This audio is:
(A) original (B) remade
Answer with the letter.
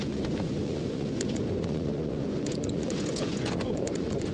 B